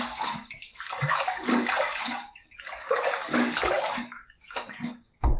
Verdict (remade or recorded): remade